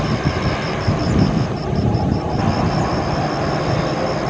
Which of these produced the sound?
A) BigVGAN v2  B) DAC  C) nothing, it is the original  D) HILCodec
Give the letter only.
C